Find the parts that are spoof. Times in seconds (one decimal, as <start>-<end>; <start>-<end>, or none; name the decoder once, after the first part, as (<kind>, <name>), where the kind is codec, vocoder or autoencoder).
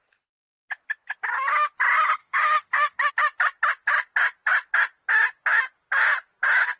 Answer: 2.2-3.1 (autoencoder, DAC-VAE)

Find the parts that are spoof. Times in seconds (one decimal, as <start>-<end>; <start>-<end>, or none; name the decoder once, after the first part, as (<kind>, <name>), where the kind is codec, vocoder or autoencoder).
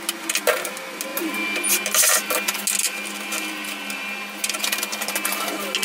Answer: none